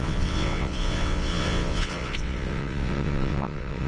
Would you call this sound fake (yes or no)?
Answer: yes